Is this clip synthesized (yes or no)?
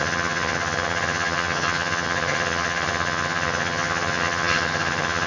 yes